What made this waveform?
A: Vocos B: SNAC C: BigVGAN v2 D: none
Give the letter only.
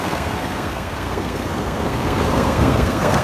B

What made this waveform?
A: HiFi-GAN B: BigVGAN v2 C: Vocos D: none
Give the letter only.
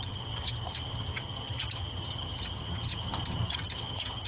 A